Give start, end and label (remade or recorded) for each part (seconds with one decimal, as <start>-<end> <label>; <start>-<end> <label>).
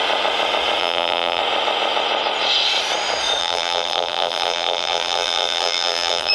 0.0-0.8 recorded; 0.8-1.4 remade; 1.4-3.4 recorded; 3.4-6.3 remade